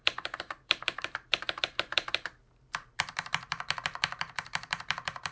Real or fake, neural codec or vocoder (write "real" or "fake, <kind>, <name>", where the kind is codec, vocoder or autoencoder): fake, vocoder, BigVGAN v2